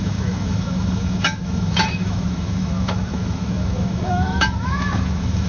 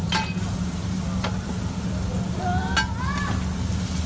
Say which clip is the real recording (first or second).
second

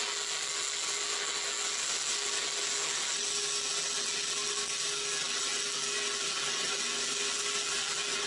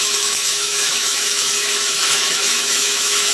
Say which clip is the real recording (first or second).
first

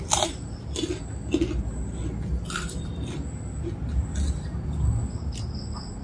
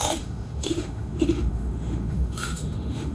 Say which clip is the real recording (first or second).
first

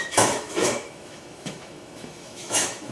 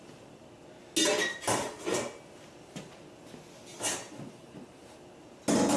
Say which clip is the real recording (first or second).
second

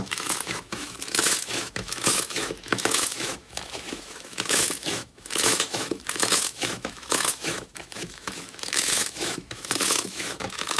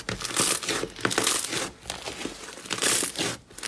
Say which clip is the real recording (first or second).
second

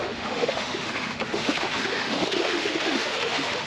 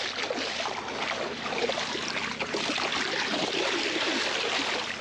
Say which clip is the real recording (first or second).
second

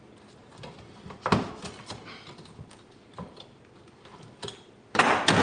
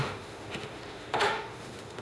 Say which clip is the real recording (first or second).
first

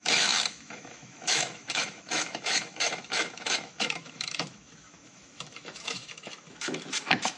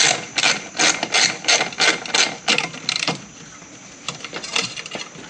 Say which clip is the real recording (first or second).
second